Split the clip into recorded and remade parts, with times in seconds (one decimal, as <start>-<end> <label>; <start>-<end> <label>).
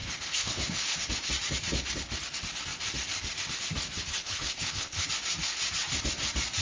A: 0.0-1.3 remade; 1.3-4.1 recorded; 4.1-5.1 remade; 5.1-6.6 recorded